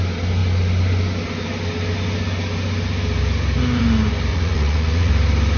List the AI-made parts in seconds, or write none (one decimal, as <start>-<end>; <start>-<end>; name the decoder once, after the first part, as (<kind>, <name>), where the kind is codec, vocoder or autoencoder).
4.3-5.1 (vocoder, Vocos)